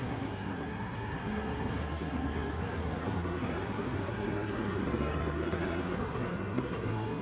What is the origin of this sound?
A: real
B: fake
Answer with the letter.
B